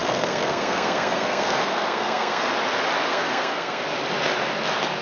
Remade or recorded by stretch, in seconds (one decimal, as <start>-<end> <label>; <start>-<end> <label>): 0.0-2.5 remade; 2.5-3.1 recorded; 3.1-3.8 remade; 3.8-5.0 recorded